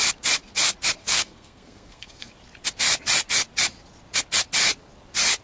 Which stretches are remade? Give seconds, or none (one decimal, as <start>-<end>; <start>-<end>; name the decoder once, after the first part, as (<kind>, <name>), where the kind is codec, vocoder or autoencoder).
1.0-2.3 (codec, SNAC)